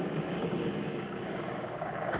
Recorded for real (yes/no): no